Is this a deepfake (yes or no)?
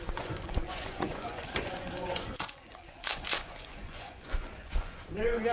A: yes